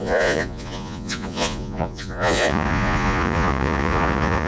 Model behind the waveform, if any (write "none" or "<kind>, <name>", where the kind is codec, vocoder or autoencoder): vocoder, Vocos